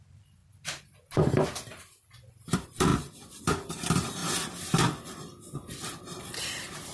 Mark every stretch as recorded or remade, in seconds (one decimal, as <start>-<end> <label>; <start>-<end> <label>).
0.0-0.4 remade; 0.4-1.2 recorded; 1.2-2.9 remade; 2.9-3.4 recorded; 3.4-4.2 remade; 4.2-6.5 recorded; 6.5-6.9 remade